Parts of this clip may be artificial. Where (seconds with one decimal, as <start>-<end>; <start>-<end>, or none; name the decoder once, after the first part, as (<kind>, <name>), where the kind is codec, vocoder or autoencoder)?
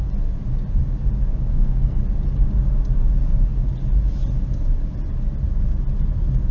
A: 1.5-2.0 (codec, SNAC)